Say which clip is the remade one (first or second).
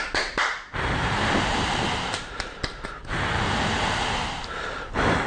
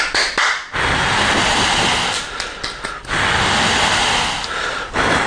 first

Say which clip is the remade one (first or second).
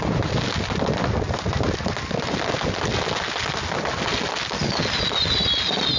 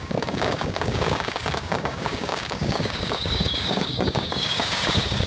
second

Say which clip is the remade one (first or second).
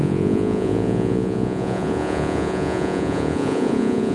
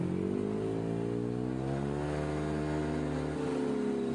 first